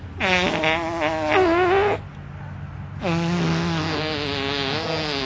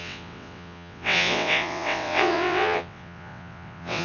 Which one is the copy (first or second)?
second